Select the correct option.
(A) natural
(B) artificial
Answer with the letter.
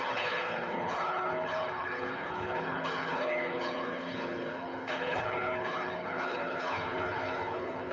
B